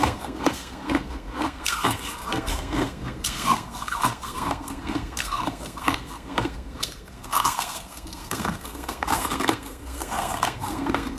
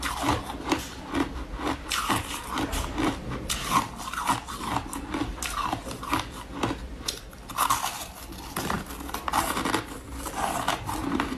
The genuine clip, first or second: second